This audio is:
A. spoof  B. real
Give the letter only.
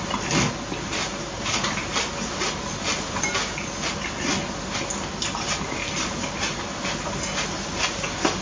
B